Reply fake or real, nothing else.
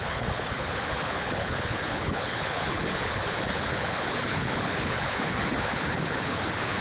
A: fake